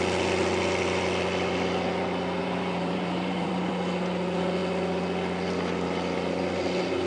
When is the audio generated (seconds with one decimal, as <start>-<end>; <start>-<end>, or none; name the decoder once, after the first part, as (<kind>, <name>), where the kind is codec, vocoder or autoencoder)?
2.4-3.7 (vocoder, BigVGAN v2)